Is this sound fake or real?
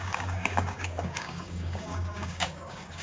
fake